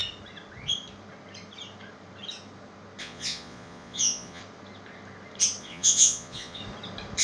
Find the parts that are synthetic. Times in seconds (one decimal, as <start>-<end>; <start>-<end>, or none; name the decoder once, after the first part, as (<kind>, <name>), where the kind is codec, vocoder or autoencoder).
3.0-4.4 (vocoder, Vocos); 5.6-6.6